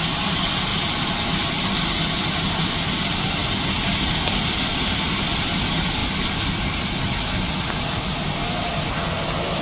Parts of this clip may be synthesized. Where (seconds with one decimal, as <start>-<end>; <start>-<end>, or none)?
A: none